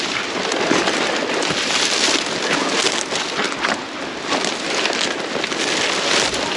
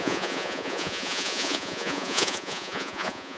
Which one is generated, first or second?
second